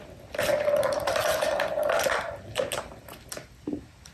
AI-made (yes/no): no